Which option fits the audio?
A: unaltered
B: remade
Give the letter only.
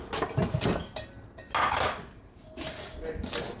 A